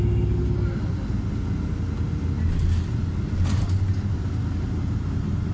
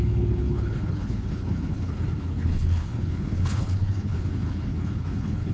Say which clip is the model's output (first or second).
second